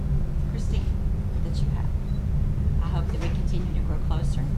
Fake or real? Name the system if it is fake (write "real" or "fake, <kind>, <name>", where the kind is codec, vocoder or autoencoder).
real